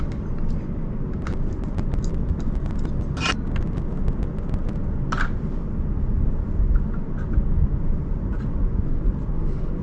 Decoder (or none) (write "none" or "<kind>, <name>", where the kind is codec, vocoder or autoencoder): none